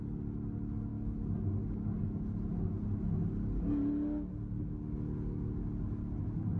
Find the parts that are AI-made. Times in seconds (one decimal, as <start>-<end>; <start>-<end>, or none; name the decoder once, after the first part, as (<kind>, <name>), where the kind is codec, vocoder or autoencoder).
none